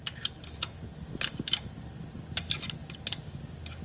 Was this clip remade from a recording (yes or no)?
no